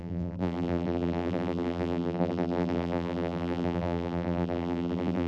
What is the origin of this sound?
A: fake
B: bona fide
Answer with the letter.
A